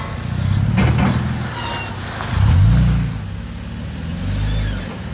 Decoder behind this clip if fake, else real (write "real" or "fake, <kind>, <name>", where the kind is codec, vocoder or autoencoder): real